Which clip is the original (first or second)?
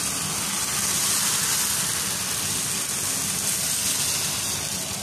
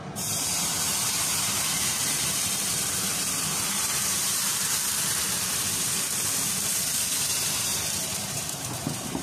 first